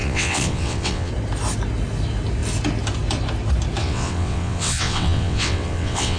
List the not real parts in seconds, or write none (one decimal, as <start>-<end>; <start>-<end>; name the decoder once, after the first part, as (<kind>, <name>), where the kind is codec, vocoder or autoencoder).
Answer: 0.0-1.1 (vocoder, WaveNeXt); 3.8-6.2